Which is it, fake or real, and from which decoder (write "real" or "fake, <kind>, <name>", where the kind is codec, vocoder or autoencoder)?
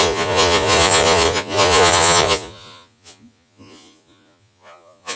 fake, vocoder, Vocos